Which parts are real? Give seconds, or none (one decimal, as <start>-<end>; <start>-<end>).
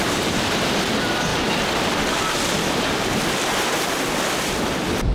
1.3-4.4